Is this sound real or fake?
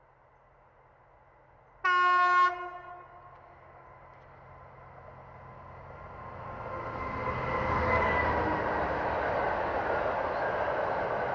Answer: real